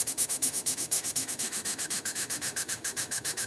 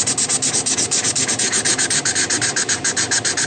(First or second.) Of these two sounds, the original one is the second